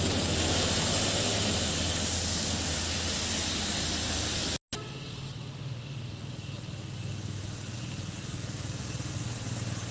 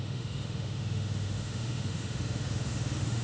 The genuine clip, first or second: first